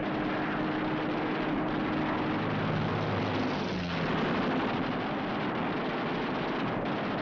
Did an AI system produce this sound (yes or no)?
no